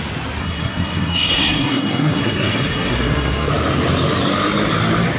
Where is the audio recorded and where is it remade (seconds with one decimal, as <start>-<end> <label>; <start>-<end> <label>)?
0.0-0.4 recorded; 0.4-3.5 remade; 3.5-5.2 recorded